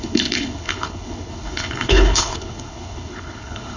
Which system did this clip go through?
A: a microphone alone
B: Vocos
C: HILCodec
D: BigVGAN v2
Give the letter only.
C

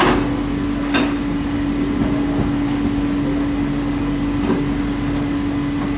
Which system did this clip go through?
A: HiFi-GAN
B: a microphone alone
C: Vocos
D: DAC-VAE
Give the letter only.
B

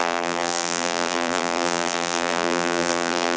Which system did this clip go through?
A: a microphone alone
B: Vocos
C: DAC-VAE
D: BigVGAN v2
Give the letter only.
D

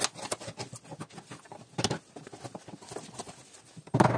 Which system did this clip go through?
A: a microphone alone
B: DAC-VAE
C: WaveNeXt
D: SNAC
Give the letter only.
A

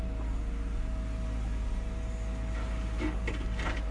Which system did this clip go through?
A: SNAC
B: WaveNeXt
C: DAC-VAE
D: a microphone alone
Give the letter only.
D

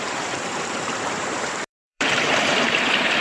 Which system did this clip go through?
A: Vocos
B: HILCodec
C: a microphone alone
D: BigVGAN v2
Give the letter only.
D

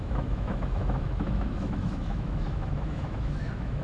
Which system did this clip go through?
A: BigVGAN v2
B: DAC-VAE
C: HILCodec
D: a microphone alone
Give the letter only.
B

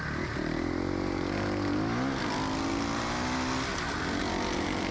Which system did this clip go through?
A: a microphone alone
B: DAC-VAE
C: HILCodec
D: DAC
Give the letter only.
A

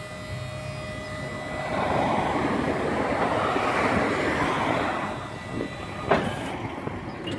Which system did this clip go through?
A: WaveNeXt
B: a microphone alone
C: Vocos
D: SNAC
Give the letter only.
B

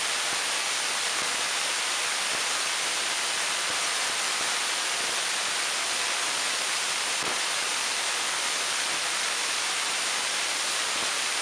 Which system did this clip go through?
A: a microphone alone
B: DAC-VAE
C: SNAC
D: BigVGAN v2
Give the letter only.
D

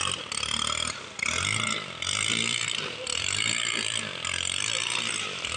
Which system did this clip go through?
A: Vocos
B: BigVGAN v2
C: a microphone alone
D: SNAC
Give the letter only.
B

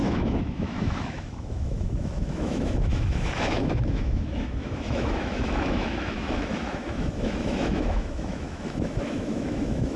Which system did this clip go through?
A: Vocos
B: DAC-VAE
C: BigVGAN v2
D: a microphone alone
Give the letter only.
B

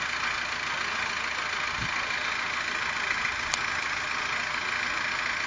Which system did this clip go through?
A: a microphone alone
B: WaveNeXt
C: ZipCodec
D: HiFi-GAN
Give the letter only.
A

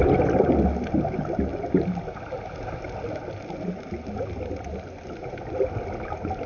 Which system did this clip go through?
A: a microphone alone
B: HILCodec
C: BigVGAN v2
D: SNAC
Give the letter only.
A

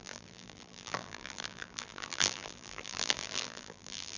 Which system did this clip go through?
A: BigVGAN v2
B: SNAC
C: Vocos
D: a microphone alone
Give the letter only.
A